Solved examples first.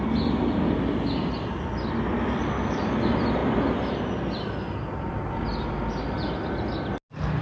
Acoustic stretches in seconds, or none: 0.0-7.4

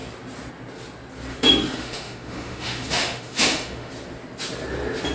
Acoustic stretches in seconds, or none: 0.0-1.3; 3.9-5.1

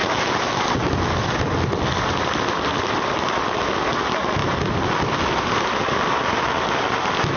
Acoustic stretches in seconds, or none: 0.6-7.4